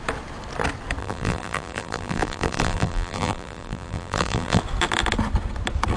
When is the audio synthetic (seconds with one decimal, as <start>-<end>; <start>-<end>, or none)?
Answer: 1.0-4.6